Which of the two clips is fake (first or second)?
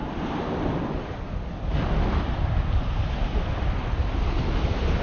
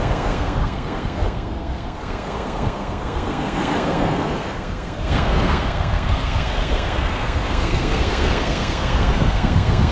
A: second